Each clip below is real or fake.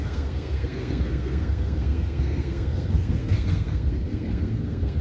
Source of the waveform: fake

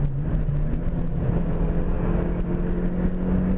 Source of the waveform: real